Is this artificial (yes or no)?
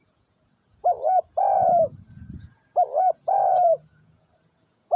yes